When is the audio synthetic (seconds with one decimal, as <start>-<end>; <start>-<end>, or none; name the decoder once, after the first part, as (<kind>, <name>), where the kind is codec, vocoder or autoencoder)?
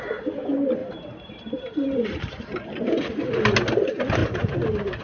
0.8-2.9 (vocoder, BigVGAN v2); 4.2-5.0